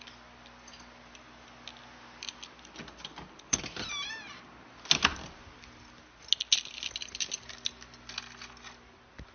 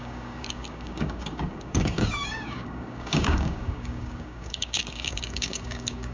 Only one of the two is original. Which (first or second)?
first